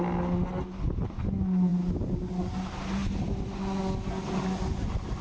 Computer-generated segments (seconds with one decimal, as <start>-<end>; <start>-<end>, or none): none